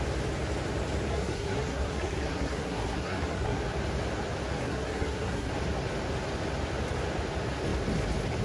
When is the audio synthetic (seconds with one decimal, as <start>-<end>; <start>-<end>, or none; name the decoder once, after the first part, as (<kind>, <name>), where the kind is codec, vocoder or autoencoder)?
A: 1.1-3.6 (codec, SNAC); 4.6-5.5